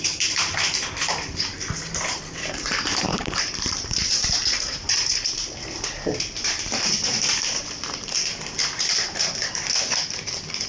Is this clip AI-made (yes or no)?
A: yes